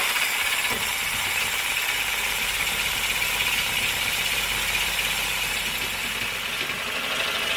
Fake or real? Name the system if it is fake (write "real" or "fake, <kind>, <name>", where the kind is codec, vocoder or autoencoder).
real